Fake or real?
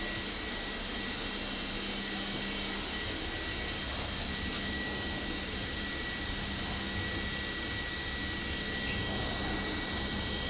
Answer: real